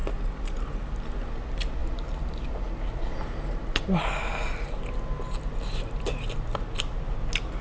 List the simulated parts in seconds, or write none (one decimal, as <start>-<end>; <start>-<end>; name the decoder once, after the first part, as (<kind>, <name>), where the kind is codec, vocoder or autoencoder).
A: none